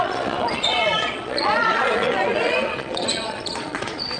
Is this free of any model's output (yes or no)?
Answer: no